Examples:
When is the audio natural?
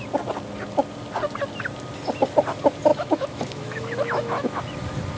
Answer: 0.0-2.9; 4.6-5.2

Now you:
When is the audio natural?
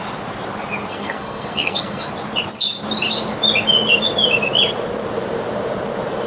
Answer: 0.0-0.9; 2.1-6.3